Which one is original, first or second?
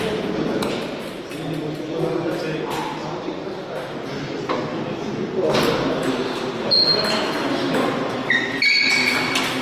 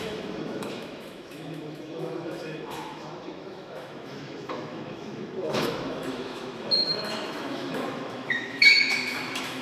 first